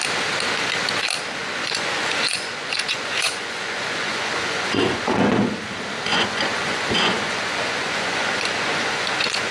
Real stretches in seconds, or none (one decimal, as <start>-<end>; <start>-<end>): 0.0-1.4; 5.3-6.1